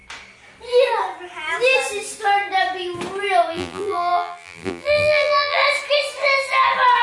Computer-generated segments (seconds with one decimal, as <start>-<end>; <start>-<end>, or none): 3.5-5.6